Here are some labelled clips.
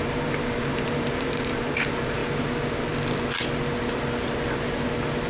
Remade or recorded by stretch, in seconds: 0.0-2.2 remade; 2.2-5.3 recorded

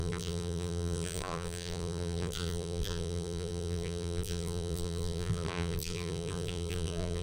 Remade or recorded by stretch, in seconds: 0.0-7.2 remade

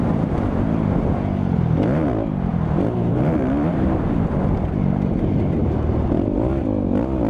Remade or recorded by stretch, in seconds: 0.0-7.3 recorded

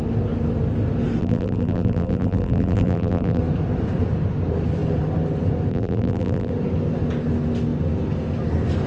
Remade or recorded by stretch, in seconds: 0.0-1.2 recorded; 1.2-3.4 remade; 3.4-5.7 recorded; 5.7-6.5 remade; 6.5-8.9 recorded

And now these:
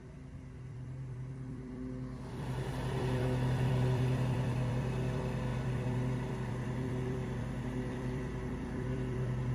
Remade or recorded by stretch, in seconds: 0.0-9.5 remade